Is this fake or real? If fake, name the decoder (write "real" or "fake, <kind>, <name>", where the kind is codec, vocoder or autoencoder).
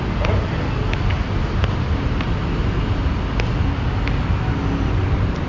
real